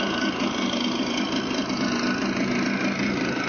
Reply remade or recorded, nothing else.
recorded